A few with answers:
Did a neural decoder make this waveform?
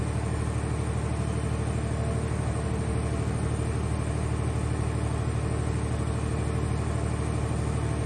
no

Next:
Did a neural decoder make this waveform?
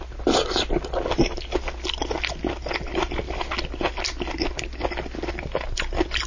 no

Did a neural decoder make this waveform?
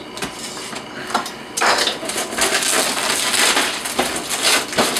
no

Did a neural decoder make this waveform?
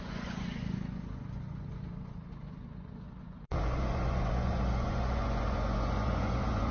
yes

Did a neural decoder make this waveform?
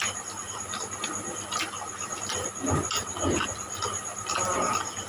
no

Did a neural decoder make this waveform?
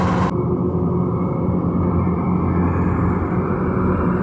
no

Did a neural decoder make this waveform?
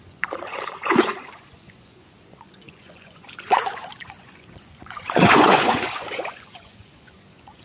yes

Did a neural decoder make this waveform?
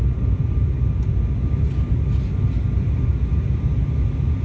no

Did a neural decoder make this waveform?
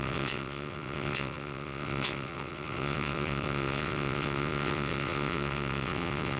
yes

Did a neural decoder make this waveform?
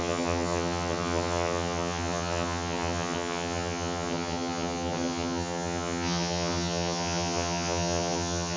yes